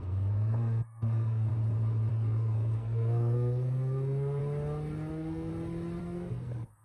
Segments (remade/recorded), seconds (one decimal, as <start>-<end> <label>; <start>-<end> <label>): 0.0-1.5 remade; 1.5-2.1 recorded; 2.1-4.4 remade; 4.4-5.1 recorded; 5.1-5.5 remade; 5.5-6.0 recorded; 6.0-6.8 remade